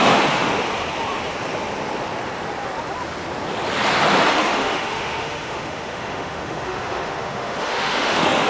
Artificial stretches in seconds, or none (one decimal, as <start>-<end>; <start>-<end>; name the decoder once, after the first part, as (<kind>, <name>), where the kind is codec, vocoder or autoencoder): 0.0-0.5 (autoencoder, DAC-VAE); 4.3-8.5

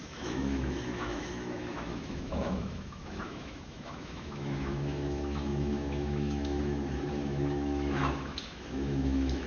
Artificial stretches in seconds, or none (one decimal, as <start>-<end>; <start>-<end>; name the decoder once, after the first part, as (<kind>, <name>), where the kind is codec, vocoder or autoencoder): 0.0-9.5 (autoencoder, DAC-VAE)

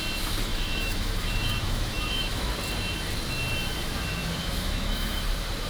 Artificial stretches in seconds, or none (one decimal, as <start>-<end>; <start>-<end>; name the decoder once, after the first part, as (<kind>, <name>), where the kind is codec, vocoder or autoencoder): 0.5-2.5 (autoencoder, DAC-VAE); 4.2-5.2

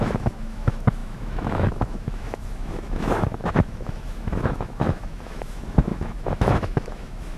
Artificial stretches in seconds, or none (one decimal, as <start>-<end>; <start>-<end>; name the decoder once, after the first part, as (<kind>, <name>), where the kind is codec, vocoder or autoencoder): 0.0-7.4 (autoencoder, DAC-VAE)

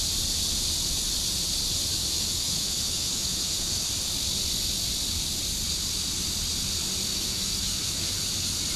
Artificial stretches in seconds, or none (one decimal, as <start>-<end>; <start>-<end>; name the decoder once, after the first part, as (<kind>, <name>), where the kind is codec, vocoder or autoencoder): 2.0-3.9 (autoencoder, DAC-VAE); 7.1-8.1

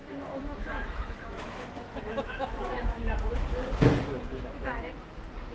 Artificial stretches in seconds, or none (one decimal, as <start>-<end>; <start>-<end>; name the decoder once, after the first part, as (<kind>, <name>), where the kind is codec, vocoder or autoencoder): 0.0-3.3 (autoencoder, DAC-VAE); 4.3-4.9